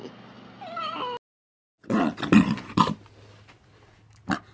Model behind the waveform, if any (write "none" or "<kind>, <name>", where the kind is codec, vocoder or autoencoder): none